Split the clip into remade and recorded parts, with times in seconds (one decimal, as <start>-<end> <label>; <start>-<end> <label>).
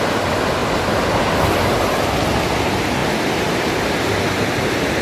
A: 0.0-0.6 recorded; 0.6-1.3 remade; 1.3-3.0 recorded; 3.0-4.0 remade; 4.0-5.0 recorded